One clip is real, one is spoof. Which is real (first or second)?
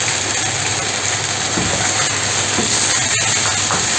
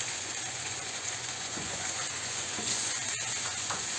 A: first